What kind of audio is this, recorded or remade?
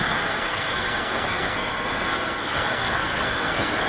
remade